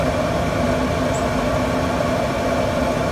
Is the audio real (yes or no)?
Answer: yes